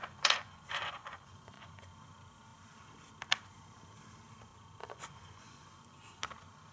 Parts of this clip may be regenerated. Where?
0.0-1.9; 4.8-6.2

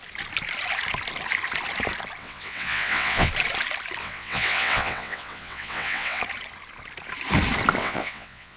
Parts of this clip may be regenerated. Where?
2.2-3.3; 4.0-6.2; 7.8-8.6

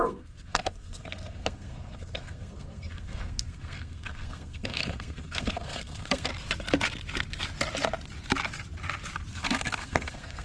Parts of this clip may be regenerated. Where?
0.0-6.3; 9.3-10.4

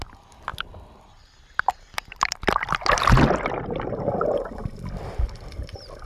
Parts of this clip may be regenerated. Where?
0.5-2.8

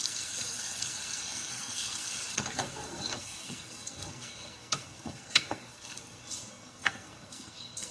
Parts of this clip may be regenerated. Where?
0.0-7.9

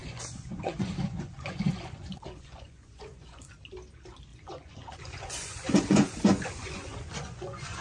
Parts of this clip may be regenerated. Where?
0.0-3.5; 4.3-7.8